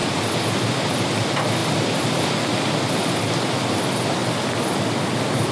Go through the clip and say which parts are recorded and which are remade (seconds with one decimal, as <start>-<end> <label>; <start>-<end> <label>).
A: 0.0-5.5 recorded